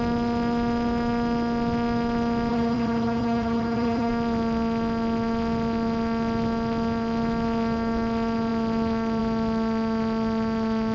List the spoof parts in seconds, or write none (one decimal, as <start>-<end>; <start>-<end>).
2.5-4.1